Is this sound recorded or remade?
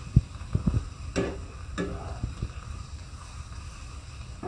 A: recorded